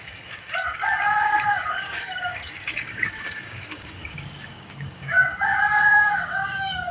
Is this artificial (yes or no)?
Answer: yes